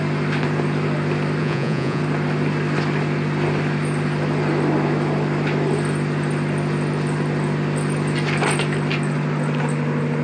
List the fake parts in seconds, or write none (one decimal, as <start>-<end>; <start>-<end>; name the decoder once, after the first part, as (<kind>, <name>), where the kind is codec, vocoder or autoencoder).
1.4-2.0 (vocoder, Vocos)